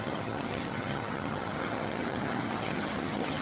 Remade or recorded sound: remade